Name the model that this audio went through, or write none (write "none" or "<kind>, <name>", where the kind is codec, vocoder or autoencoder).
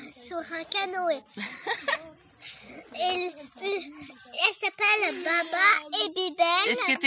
none